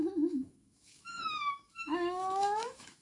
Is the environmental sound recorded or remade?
remade